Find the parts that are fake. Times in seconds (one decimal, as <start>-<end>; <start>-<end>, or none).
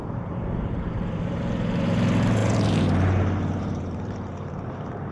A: 0.0-5.1